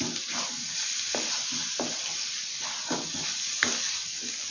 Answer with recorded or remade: recorded